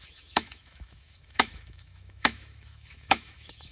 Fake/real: fake